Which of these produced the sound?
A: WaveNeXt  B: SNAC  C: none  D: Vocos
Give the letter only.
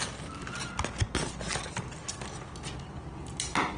C